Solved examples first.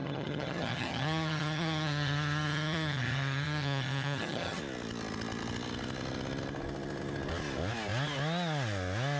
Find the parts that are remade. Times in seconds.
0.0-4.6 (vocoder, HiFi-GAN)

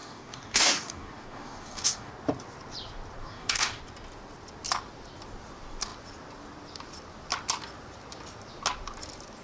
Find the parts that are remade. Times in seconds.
0.0-2.1 (codec, DAC); 3.2-3.8

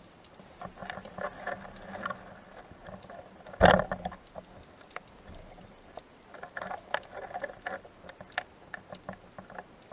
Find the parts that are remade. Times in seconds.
none